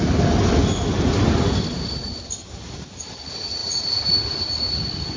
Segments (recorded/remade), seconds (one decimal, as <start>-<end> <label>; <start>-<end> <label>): 0.0-5.2 recorded